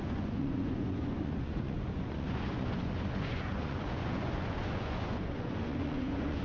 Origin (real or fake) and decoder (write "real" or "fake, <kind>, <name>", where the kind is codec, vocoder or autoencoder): fake, vocoder, Vocos